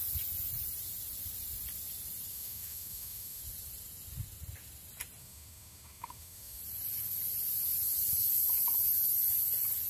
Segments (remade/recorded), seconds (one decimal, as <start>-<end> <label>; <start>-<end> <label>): 0.0-2.3 recorded; 2.3-3.4 remade; 3.4-5.2 recorded; 5.2-6.6 remade; 6.6-9.9 recorded